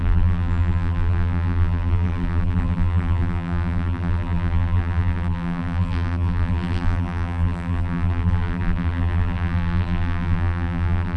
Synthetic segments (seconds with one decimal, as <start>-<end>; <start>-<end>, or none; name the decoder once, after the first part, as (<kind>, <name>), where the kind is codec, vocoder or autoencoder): 0.0-11.2 (vocoder, BigVGAN v2)